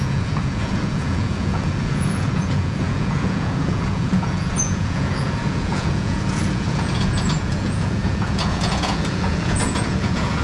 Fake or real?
fake